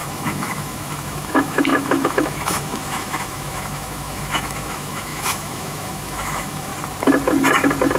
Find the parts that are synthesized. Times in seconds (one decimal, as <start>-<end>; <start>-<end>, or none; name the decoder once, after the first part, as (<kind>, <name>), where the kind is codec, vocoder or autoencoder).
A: 0.0-6.7 (autoencoder, DAC-VAE)

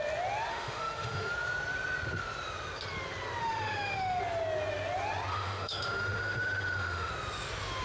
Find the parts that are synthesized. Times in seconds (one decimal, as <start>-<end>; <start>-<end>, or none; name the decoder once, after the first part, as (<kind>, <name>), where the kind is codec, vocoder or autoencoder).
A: 0.5-1.3 (autoencoder, DAC-VAE); 3.4-4.2; 5.3-7.1

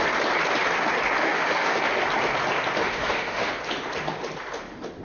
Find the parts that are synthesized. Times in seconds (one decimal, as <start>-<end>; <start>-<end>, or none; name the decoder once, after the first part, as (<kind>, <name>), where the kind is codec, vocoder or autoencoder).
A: 1.2-1.8 (autoencoder, DAC-VAE); 2.8-3.5

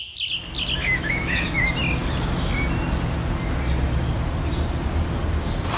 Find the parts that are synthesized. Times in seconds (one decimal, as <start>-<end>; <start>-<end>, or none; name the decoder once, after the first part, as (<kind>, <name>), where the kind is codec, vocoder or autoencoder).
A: 0.8-1.6 (autoencoder, DAC-VAE)

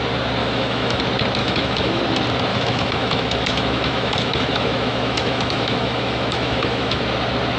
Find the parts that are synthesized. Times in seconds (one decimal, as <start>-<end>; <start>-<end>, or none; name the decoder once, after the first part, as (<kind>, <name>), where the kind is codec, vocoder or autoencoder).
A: 0.4-1.0 (autoencoder, DAC-VAE); 1.4-2.0; 2.5-7.0

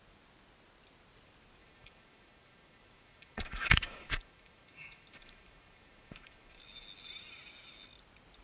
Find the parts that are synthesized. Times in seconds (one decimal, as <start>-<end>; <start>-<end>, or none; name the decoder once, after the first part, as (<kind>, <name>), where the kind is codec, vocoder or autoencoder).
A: 1.6-6.6 (autoencoder, DAC-VAE)

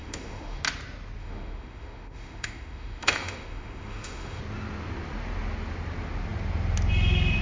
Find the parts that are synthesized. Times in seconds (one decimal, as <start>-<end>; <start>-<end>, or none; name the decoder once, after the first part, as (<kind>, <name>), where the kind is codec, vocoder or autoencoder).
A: 0.0-0.6 (autoencoder, DAC-VAE); 1.2-4.4